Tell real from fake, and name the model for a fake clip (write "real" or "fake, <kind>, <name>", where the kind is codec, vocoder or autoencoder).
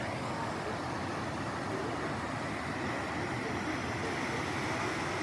real